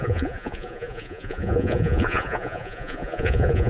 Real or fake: fake